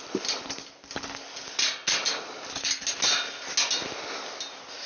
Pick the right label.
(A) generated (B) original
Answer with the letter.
B